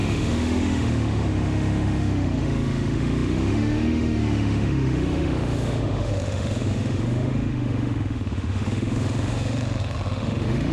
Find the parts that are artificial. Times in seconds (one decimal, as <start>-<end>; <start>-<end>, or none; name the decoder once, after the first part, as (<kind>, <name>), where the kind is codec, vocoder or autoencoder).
0.0-10.7 (autoencoder, DAC-VAE)